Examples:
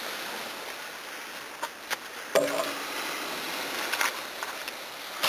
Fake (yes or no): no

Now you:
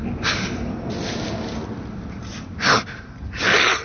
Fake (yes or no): no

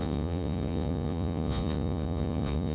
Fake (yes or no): yes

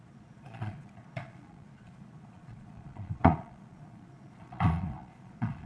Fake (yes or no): yes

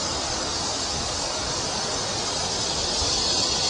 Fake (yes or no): no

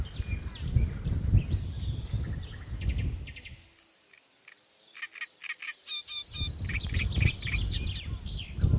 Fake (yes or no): no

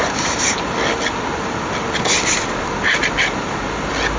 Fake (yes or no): no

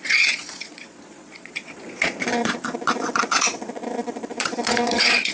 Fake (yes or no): yes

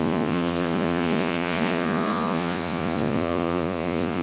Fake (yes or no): yes